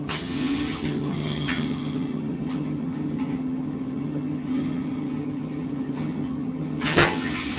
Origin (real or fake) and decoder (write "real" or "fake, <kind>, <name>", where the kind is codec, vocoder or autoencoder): fake, vocoder, HiFi-GAN